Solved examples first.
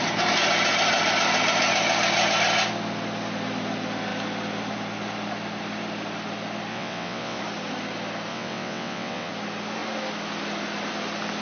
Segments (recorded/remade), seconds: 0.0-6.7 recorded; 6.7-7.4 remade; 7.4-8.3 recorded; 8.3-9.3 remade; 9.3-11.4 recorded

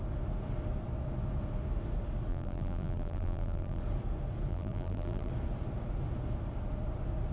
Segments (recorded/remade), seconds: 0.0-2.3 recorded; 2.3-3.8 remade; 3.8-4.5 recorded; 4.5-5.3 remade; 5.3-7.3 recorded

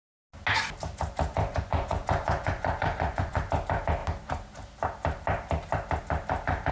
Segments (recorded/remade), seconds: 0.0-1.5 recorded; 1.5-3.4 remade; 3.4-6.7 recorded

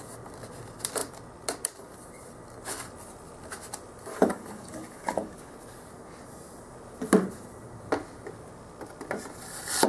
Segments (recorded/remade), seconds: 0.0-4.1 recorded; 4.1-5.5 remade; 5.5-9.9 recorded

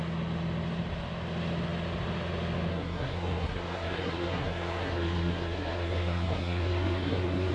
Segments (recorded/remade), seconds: 0.0-2.7 recorded; 2.7-7.5 remade

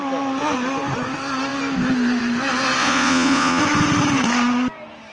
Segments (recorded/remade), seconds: 0.0-2.8 recorded; 2.8-3.6 remade; 3.6-5.1 recorded

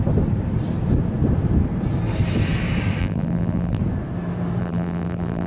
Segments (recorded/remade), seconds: 0.0-3.0 recorded; 3.0-3.8 remade; 3.8-4.6 recorded; 4.6-5.5 remade

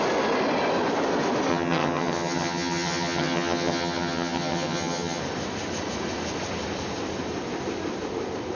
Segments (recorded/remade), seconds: 0.0-1.5 recorded; 1.5-5.2 remade; 5.2-8.5 recorded